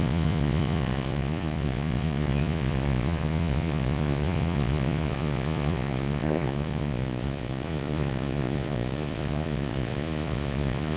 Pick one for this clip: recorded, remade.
remade